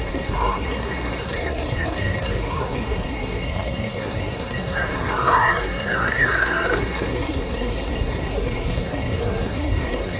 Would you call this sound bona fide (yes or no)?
no